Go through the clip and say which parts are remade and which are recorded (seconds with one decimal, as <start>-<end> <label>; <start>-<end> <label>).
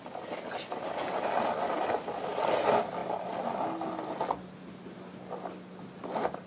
0.0-6.5 recorded